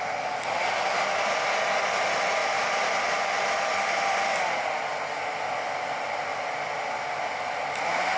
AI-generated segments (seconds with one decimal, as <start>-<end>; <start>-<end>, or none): 2.4-3.5